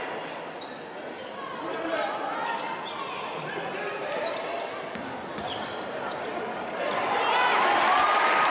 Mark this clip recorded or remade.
recorded